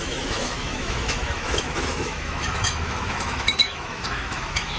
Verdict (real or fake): fake